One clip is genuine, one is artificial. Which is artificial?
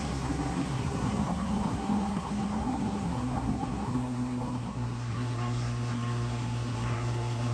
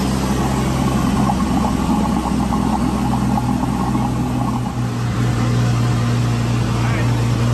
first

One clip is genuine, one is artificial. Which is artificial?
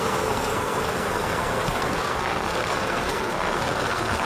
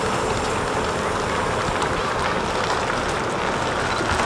first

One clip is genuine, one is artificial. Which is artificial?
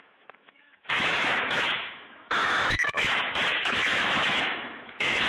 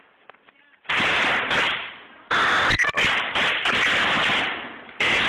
first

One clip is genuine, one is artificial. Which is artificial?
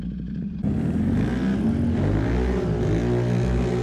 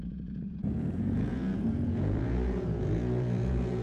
second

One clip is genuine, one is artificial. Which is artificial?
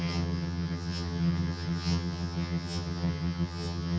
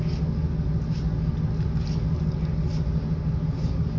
first